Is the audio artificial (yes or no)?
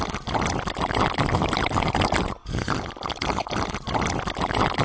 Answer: no